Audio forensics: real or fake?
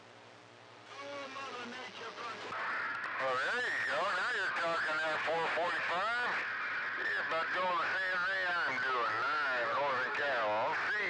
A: real